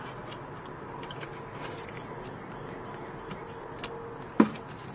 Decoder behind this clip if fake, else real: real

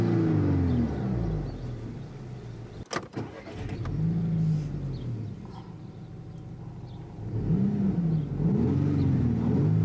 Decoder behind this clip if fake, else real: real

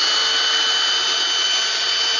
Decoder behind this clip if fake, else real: real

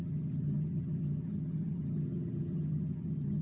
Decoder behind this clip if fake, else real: fake, vocoder, HiFi-GAN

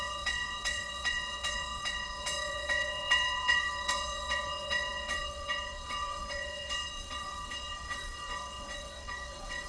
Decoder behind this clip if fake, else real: fake, vocoder, WaveNeXt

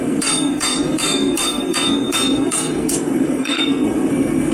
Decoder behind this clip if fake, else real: fake, codec, SNAC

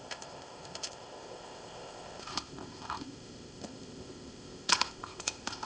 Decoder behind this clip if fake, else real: fake, codec, ZipCodec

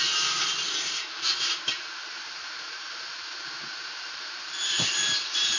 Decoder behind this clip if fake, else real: fake, vocoder, BigVGAN v2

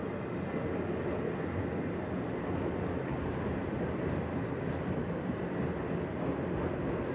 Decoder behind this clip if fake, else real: real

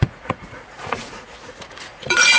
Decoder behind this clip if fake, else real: fake, vocoder, Vocos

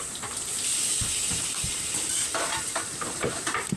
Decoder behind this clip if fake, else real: fake, vocoder, BigVGAN v2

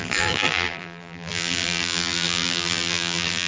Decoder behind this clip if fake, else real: fake, vocoder, BigVGAN v2